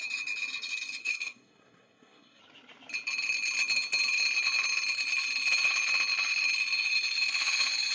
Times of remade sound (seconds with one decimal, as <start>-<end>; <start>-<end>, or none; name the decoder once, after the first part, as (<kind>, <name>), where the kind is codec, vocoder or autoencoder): 1.0-2.4 (codec, SNAC)